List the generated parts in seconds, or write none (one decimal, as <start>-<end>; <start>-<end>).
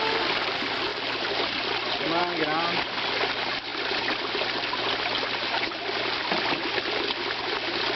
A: none